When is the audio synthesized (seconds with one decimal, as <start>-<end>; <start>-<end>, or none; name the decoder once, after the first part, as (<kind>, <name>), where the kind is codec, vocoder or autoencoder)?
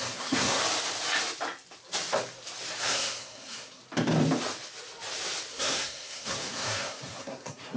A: 0.0-0.6 (codec, SNAC); 2.8-3.8; 5.5-7.8